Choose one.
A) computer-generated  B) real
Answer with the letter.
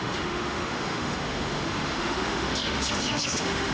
A